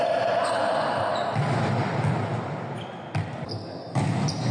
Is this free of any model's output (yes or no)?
yes